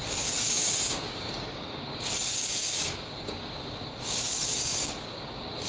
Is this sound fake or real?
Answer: fake